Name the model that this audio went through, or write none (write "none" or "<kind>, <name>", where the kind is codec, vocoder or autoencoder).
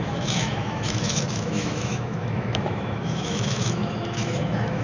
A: autoencoder, DAC-VAE